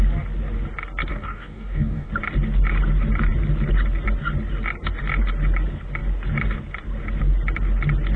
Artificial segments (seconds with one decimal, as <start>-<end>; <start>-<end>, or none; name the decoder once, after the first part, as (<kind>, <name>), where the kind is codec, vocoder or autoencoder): 1.1-2.1 (codec, DAC)